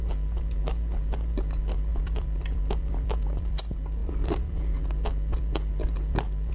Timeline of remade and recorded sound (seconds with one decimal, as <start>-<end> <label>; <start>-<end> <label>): 0.0-1.9 recorded; 1.9-3.6 remade; 3.6-4.0 recorded; 4.0-4.8 remade; 4.8-6.5 recorded